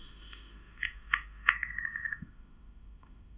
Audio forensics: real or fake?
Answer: fake